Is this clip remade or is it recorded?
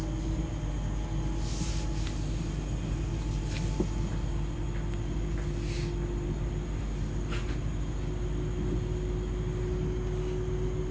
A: recorded